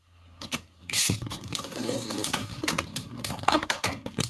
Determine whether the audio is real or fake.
fake